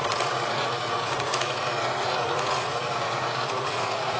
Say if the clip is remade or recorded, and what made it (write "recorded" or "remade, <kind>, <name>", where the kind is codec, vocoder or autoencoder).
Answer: remade, vocoder, Vocos